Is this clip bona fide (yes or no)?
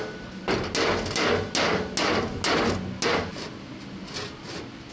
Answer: yes